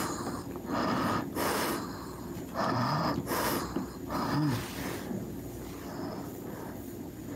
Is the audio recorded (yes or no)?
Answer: yes